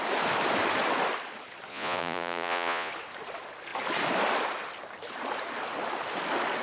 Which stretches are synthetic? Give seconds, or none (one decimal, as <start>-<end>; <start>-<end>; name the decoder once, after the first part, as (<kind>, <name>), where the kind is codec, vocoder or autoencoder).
1.7-2.9 (vocoder, Vocos)